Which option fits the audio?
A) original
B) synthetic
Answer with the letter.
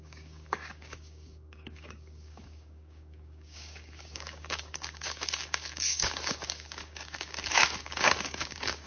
B